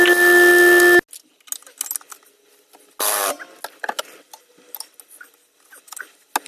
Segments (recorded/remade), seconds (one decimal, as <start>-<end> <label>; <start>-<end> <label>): 0.0-6.5 recorded